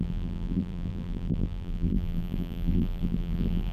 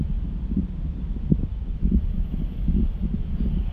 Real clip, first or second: second